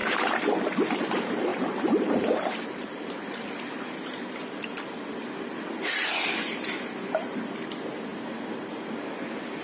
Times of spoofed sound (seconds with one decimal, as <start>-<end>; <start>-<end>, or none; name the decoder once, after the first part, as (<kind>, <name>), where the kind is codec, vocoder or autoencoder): 1.5-3.5 (vocoder, BigVGAN v2)